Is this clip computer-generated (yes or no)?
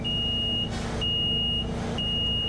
no